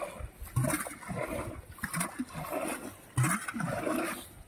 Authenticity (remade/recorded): recorded